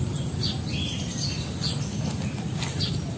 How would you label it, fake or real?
real